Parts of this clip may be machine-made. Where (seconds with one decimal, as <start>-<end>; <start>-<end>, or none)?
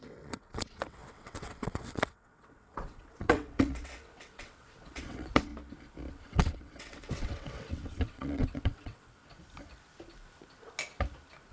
0.0-5.5; 6.1-9.2